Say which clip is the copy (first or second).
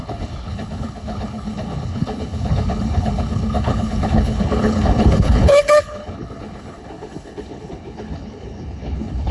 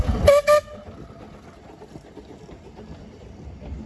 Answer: first